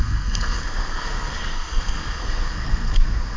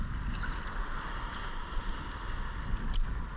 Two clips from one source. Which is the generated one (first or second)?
first